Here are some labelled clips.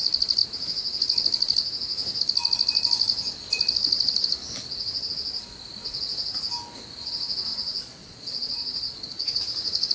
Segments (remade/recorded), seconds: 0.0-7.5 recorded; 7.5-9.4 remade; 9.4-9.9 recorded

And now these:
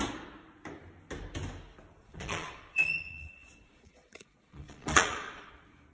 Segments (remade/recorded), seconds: 0.0-2.0 recorded; 2.0-5.5 remade; 5.5-5.9 recorded

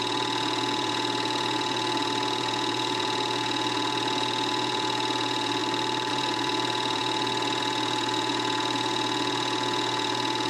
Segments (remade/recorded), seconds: 0.0-5.6 remade; 5.6-6.1 recorded; 6.1-10.5 remade

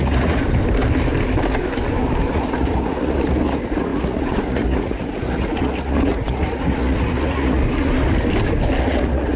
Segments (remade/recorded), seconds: 0.0-0.4 remade; 0.4-2.3 recorded; 2.3-7.6 remade; 7.6-8.8 recorded; 8.8-9.4 remade